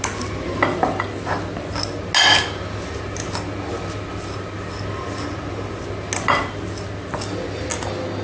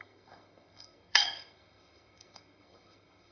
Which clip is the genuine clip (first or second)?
first